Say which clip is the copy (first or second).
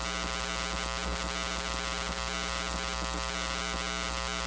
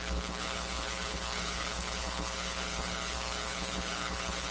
second